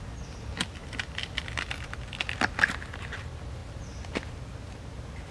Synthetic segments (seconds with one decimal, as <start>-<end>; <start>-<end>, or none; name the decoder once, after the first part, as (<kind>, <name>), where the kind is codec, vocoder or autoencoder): 0.8-2.0 (vocoder, BigVGAN v2)